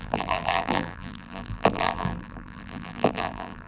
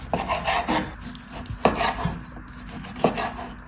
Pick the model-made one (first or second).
first